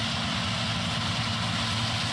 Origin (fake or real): real